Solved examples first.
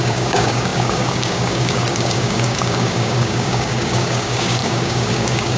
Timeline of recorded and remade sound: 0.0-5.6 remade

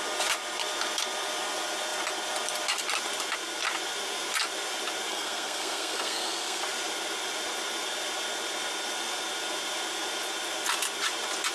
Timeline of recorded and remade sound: 0.0-5.1 recorded; 5.1-6.6 remade; 6.6-11.5 recorded

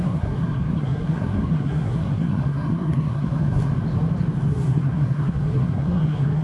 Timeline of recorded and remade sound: 0.0-3.7 remade; 3.7-4.5 recorded; 4.5-6.4 remade

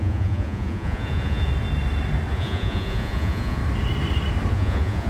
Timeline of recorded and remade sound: 0.0-1.5 remade; 1.5-2.3 recorded; 2.3-3.6 remade; 3.6-4.5 recorded; 4.5-5.1 remade

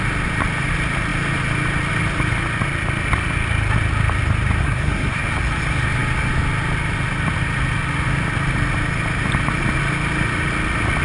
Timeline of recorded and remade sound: 0.0-4.6 recorded; 4.6-5.2 remade; 5.2-11.0 recorded

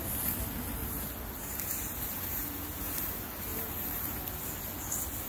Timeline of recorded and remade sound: 0.0-0.8 recorded; 0.8-3.1 remade; 3.1-3.5 recorded; 3.5-4.2 remade; 4.2-5.3 recorded

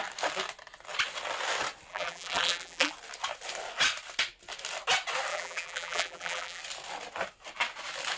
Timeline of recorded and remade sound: 0.0-1.9 recorded; 1.9-2.9 remade; 2.9-5.3 recorded; 5.3-6.6 remade; 6.6-8.2 recorded

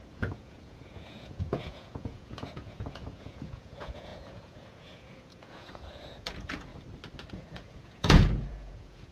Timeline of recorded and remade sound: 0.0-6.7 remade; 6.7-7.3 recorded; 7.3-9.1 remade